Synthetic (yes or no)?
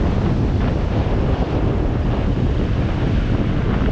no